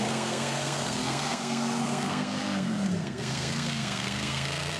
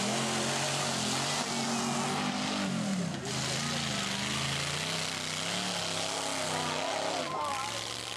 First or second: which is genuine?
second